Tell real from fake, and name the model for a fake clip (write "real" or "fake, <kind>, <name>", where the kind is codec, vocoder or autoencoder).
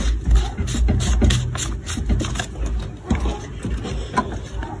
real